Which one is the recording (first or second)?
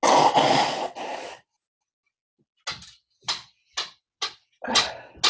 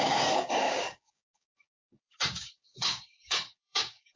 first